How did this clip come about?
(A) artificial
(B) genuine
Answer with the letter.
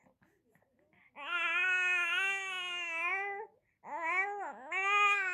B